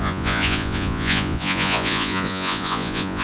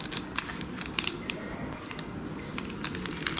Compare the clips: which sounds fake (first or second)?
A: first